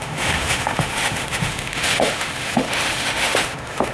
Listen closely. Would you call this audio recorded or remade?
remade